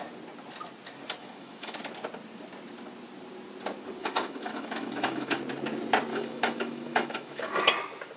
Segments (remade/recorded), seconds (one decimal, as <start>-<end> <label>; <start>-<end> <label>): 0.0-1.2 recorded; 1.2-1.8 remade; 1.8-4.0 recorded; 4.0-5.4 remade; 5.4-6.1 recorded; 6.1-7.7 remade; 7.7-8.2 recorded